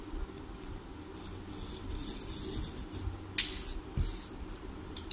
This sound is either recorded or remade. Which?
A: recorded